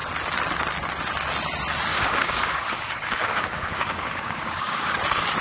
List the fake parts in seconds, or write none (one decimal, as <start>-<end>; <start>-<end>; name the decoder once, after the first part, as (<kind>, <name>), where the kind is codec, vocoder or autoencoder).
1.9-5.0 (codec, DAC)

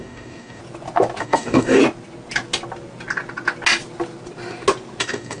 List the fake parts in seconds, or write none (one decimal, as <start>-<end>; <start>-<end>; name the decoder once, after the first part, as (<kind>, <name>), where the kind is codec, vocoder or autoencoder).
0.0-0.6 (codec, DAC); 1.2-1.8; 5.0-5.4

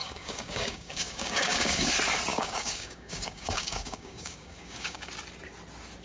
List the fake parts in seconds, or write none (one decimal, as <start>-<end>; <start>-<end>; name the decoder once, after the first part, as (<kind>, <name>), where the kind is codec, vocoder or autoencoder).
0.0-1.9 (codec, DAC); 2.3-5.1

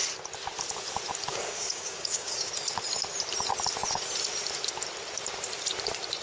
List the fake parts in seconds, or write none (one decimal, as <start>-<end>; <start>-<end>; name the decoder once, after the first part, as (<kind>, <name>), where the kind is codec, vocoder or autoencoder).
1.3-2.5 (codec, DAC)

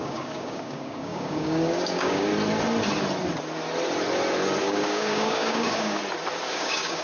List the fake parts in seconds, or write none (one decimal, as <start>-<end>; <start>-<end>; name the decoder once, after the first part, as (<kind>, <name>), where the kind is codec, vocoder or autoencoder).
0.0-2.3 (codec, DAC); 4.6-6.0; 6.5-7.0

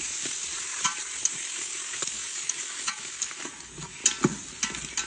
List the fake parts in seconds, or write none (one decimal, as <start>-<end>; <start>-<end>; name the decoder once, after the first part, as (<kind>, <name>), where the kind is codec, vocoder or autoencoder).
0.0-0.4 (codec, DAC); 1.3-4.0